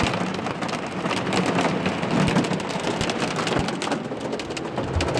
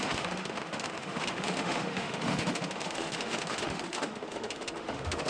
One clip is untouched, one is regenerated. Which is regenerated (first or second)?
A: second